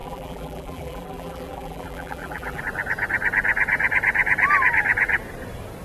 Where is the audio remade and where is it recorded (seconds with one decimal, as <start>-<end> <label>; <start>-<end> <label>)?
0.0-2.6 remade; 2.6-5.8 recorded